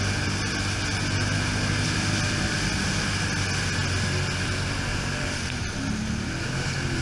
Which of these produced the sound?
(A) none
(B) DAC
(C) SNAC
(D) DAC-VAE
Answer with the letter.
A